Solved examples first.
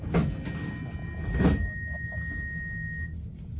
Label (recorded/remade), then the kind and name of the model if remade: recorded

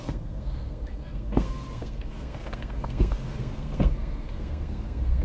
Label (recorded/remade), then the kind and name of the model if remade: remade, codec, SNAC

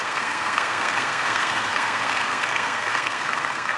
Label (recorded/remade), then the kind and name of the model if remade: remade, codec, SNAC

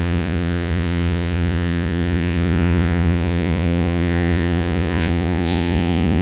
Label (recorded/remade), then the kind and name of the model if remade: remade, vocoder, Vocos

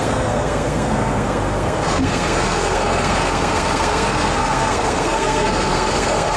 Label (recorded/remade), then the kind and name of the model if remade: remade, codec, SNAC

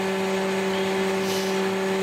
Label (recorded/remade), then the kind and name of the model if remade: recorded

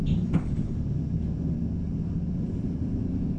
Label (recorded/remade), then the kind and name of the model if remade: recorded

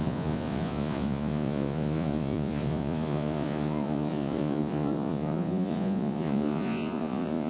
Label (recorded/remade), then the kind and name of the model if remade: remade, vocoder, Vocos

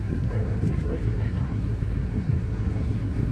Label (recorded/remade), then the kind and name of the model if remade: remade, codec, SNAC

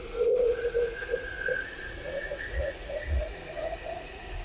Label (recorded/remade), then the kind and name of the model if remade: remade, vocoder, Vocos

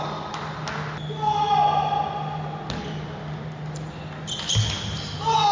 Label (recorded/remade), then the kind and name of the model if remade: recorded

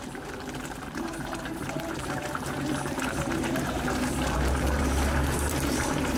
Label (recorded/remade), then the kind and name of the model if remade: remade, vocoder, BigVGAN v2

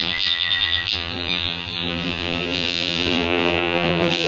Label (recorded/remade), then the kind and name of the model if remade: remade, vocoder, BigVGAN v2